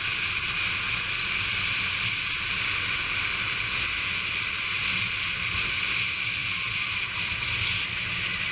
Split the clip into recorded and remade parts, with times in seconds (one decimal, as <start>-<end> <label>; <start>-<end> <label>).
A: 0.0-8.5 recorded